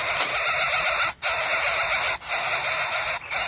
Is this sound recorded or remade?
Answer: recorded